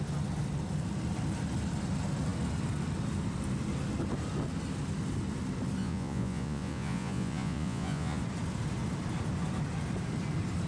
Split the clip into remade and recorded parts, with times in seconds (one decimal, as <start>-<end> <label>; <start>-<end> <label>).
0.0-5.8 recorded; 5.8-8.2 remade; 8.2-10.7 recorded